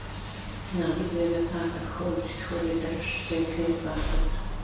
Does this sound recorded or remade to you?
recorded